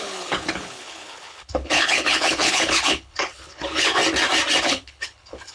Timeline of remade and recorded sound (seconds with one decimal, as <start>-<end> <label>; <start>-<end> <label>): 0.0-4.0 remade; 4.0-4.6 recorded; 4.6-5.5 remade